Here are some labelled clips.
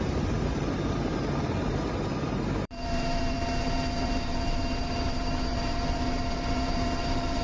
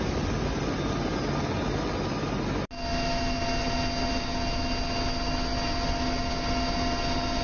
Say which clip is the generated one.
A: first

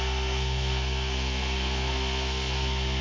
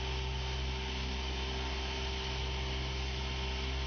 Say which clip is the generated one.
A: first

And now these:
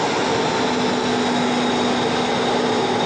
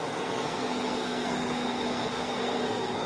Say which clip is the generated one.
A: second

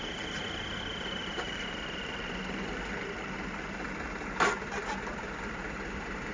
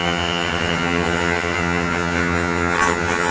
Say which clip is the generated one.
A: second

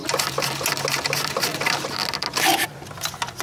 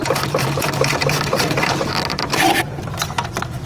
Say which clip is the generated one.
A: second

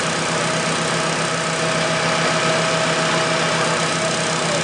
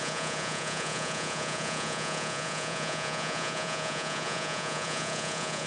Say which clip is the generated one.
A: second